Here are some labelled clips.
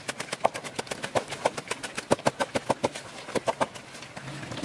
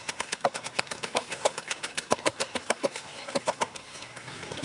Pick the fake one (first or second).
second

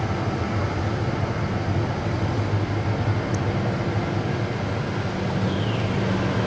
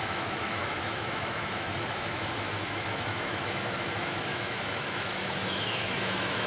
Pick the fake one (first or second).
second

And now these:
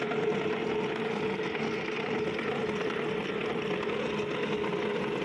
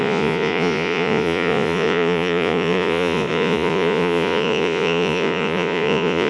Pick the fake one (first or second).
second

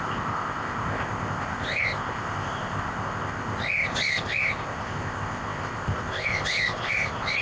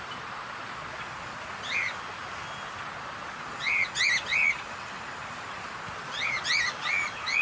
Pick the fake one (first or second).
first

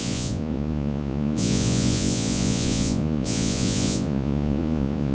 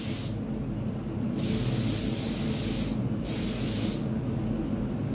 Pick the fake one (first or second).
first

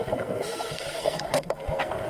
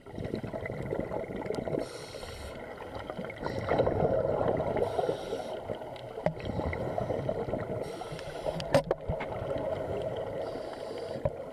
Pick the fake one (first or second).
first